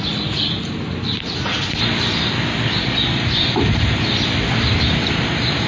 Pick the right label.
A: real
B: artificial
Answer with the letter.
A